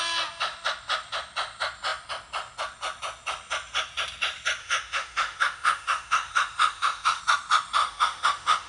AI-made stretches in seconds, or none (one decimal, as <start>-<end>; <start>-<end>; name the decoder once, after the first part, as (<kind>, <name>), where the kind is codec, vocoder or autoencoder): 4.6-7.2 (autoencoder, DAC-VAE); 7.8-8.7